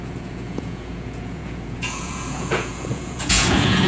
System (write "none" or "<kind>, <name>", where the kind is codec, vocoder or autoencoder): vocoder, Vocos